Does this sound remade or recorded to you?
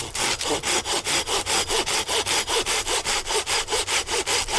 remade